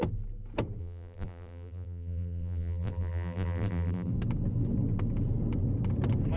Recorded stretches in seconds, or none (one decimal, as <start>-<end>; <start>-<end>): 0.0-0.8; 4.1-6.4